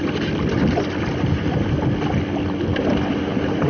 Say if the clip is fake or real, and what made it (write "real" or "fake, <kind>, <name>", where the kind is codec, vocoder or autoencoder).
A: real